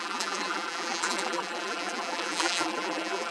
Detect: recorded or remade remade